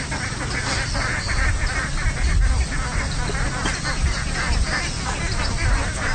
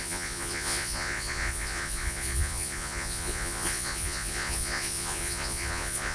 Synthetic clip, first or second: second